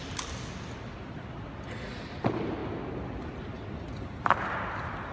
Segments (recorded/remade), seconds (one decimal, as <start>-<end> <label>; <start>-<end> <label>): 0.0-5.1 recorded